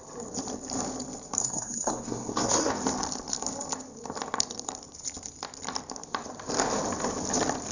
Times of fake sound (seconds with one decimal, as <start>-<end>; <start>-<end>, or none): 1.4-2.7